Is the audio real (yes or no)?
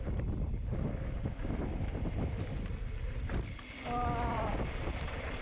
yes